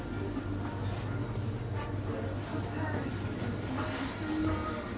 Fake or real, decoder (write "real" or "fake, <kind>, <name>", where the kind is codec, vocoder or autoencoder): real